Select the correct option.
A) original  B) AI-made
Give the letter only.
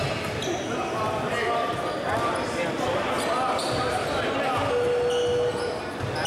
A